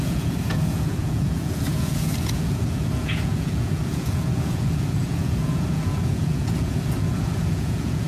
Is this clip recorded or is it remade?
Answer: remade